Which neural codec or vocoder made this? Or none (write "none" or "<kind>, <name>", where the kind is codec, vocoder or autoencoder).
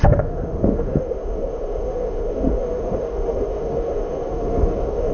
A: autoencoder, DAC-VAE